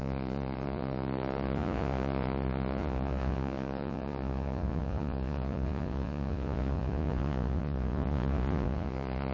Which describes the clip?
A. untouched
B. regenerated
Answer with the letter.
B